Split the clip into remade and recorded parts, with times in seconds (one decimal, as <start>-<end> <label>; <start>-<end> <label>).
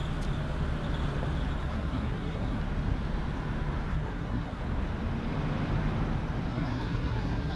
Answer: 0.0-1.6 recorded; 1.6-2.6 remade; 2.6-3.9 recorded; 3.9-4.6 remade; 4.6-6.5 recorded; 6.5-7.6 remade